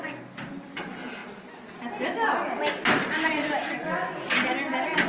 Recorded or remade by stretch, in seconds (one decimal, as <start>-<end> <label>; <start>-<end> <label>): 0.0-5.1 recorded